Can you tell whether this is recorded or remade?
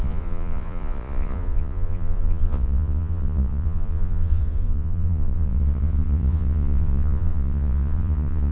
remade